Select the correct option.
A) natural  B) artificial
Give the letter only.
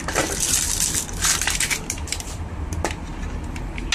A